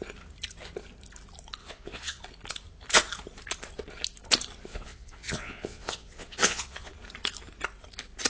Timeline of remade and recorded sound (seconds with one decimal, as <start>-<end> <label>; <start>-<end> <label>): 0.0-1.6 recorded; 1.6-2.2 remade; 2.2-4.7 recorded; 4.7-6.9 remade; 6.9-8.3 recorded